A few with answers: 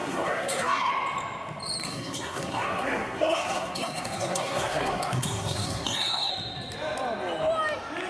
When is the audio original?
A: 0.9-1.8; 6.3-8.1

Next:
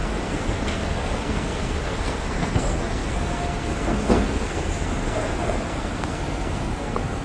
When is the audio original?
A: none

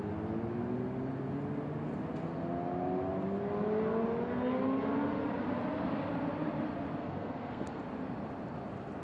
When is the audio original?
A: 0.0-7.0; 7.8-9.0

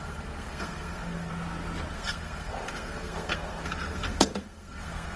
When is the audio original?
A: 1.3-1.9

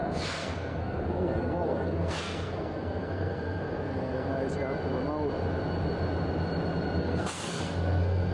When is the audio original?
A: 4.3-7.0